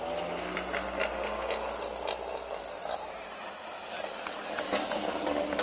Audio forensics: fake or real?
real